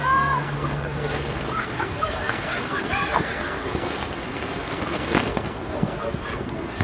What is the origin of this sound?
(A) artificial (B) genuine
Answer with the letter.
A